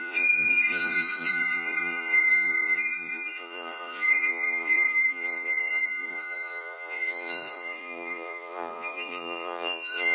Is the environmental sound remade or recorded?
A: remade